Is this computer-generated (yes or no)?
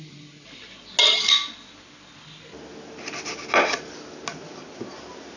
no